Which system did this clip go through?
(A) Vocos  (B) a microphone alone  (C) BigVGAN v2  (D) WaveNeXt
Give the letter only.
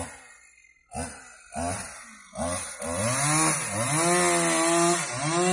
B